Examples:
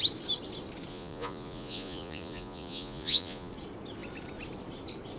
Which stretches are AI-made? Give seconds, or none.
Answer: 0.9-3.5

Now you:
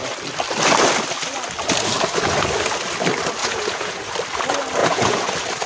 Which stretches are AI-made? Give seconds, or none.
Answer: 3.4-4.0; 4.8-5.3

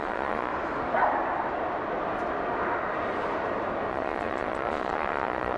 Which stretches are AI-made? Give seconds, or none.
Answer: 0.0-0.5; 3.9-5.6

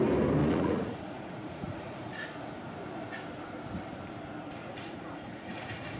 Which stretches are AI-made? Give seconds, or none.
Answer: 0.4-2.4; 4.6-6.0

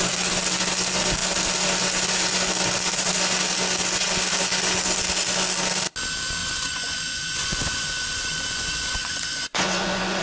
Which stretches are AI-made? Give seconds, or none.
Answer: 6.4-10.2